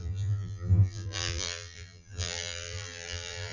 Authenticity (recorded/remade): remade